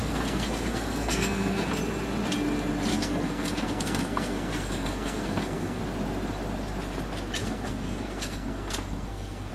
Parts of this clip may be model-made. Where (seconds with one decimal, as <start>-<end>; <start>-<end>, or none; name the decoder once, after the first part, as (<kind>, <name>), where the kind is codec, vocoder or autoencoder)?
0.0-1.7 (codec, SNAC); 2.9-5.8; 7.4-9.5